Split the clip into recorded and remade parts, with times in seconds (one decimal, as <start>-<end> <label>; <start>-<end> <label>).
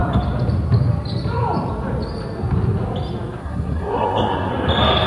0.0-3.4 recorded; 3.4-4.5 remade; 4.5-5.1 recorded